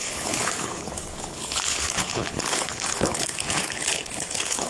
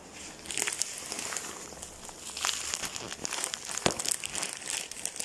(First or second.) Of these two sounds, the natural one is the second